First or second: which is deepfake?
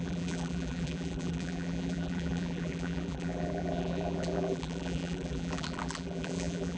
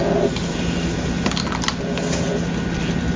first